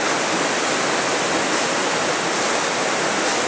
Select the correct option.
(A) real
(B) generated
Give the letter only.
A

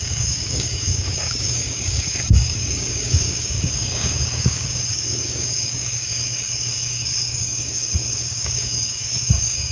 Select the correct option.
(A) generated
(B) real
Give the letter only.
A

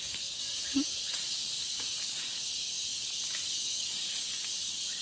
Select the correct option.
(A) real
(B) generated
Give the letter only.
B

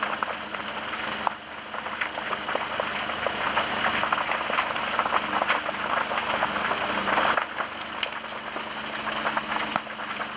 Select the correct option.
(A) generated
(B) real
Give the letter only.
B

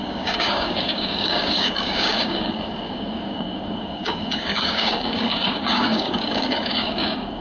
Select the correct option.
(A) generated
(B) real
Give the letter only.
A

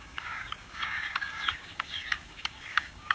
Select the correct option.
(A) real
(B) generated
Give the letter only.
B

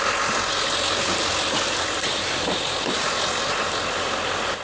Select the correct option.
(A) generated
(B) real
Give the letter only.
B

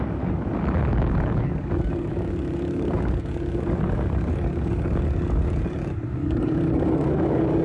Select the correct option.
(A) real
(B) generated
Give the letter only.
B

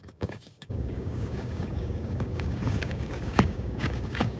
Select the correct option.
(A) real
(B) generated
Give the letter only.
B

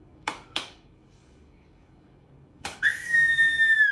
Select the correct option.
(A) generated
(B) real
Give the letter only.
A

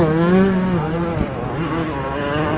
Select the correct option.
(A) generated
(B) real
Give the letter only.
B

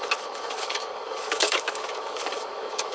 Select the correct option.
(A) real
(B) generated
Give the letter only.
B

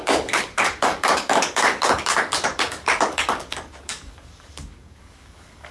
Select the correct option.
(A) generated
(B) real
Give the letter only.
A